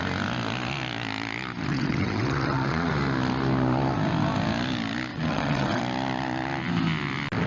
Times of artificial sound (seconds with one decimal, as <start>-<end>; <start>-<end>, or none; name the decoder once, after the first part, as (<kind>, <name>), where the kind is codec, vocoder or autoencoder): 1.7-2.9 (vocoder, WaveNeXt); 5.1-5.8